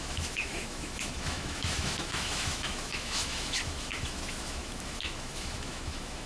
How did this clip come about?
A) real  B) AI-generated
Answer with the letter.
B